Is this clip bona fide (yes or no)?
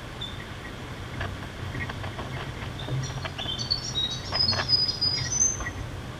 yes